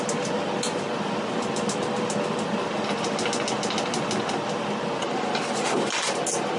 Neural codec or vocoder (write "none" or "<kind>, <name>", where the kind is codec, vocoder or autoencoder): none